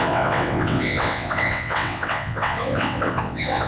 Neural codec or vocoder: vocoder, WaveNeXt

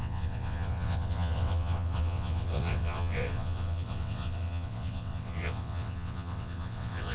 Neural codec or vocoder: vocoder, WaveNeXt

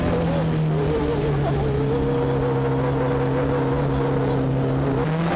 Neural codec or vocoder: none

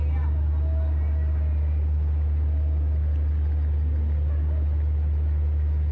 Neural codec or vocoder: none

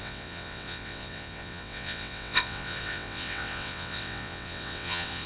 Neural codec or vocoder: vocoder, WaveNeXt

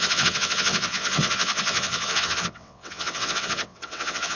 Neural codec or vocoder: vocoder, WaveNeXt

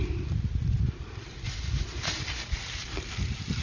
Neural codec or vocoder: none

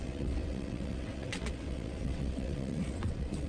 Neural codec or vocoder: vocoder, WaveNeXt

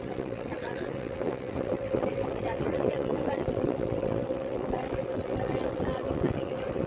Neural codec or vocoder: vocoder, WaveNeXt